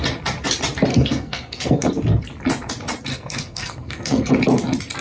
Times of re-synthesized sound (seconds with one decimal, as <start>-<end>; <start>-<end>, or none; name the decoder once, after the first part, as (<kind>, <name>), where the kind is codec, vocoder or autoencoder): 0.9-1.9 (codec, SNAC); 3.1-4.3